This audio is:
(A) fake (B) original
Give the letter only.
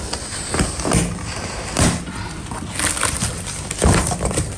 B